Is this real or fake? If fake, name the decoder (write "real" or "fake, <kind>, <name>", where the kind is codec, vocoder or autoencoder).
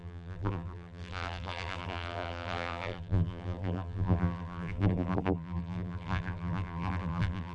fake, vocoder, BigVGAN v2